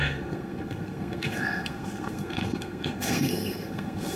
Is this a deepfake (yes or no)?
yes